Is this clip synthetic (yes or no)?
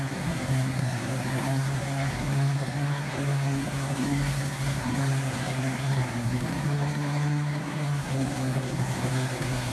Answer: yes